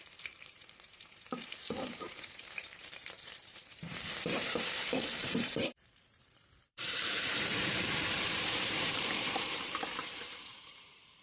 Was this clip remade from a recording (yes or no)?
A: yes